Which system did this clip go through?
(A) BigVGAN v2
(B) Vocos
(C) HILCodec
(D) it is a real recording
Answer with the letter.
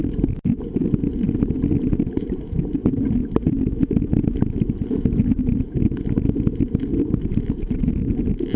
D